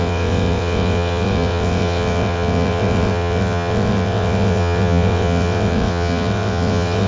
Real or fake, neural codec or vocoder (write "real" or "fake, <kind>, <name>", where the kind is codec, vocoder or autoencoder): fake, vocoder, WaveNeXt